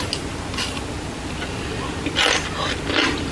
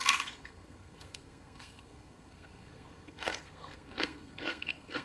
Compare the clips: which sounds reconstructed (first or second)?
second